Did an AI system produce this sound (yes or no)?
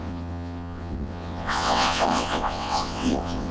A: yes